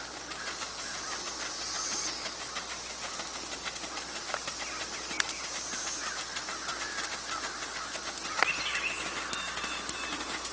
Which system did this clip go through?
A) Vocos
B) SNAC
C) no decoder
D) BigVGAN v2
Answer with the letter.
C